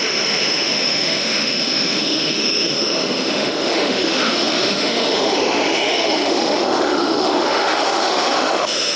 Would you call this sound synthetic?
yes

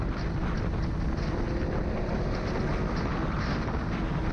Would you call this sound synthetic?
no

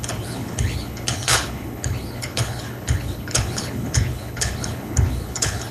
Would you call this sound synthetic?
yes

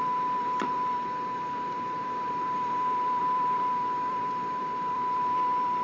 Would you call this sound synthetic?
yes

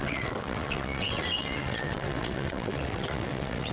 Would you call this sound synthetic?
yes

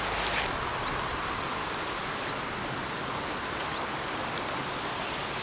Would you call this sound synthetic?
no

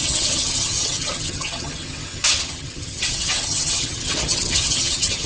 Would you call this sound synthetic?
yes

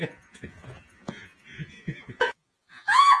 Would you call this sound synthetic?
yes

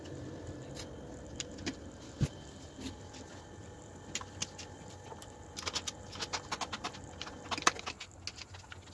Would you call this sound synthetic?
no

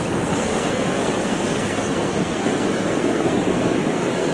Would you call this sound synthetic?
yes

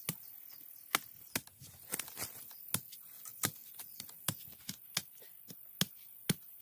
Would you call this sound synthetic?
no